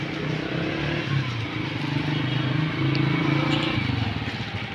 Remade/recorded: recorded